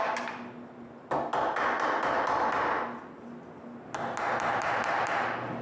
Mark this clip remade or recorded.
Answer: recorded